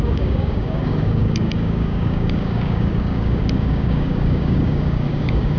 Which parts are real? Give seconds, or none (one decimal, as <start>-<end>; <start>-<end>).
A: none